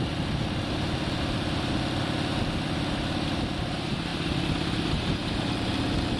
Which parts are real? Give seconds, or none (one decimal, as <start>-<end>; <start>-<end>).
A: 0.0-6.2